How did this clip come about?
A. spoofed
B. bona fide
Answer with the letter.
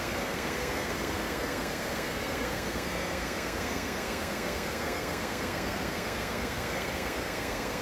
A